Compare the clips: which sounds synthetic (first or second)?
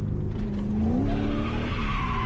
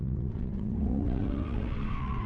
second